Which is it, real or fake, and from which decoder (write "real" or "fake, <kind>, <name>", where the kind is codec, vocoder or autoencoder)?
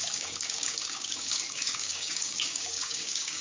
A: fake, codec, DAC